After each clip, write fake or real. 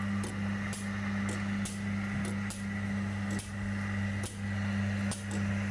real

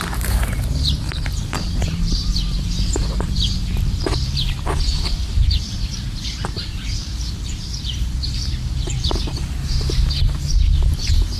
fake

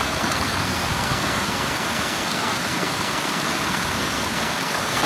fake